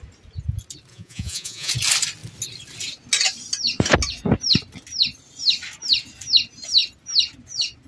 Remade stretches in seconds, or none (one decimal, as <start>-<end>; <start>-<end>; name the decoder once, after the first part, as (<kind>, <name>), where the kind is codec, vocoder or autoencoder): 0.9-1.7 (vocoder, Vocos)